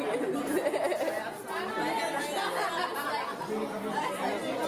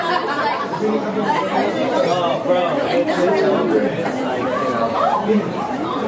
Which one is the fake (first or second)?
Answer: second